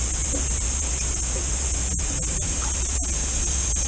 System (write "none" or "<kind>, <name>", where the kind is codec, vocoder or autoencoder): none